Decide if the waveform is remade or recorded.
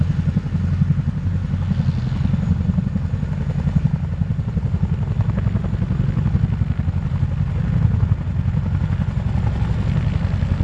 recorded